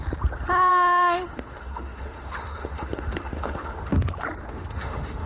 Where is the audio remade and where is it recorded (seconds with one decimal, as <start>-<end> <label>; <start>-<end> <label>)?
0.0-0.7 recorded; 0.7-3.9 remade; 3.9-4.4 recorded; 4.4-5.3 remade